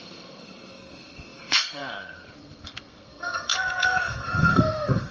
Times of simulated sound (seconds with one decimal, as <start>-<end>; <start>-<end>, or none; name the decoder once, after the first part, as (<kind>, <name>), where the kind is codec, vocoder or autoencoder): 0.0-5.1 (codec, SNAC)